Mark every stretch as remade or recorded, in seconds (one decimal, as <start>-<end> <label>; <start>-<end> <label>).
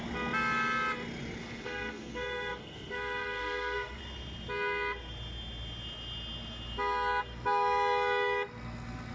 0.0-1.4 recorded; 1.4-4.0 remade; 4.0-9.1 recorded